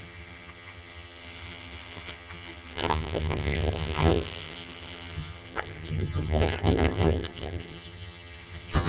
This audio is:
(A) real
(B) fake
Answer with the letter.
B